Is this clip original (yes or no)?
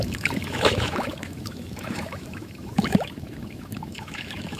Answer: no